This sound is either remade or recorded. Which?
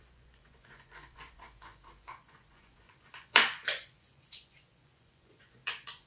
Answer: remade